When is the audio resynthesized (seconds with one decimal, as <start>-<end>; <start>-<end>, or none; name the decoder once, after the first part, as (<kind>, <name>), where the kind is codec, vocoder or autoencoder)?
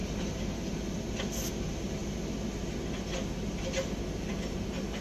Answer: none